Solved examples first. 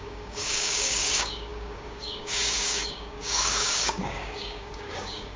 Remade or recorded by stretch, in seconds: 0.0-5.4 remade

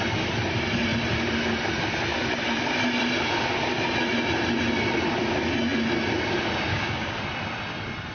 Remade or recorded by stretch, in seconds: 0.0-6.7 recorded; 6.7-7.2 remade; 7.2-8.1 recorded

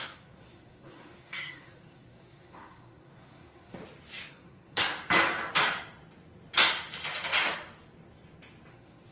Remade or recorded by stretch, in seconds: 0.0-3.8 remade; 3.8-4.3 recorded; 4.3-4.8 remade; 4.8-8.7 recorded; 8.7-9.1 remade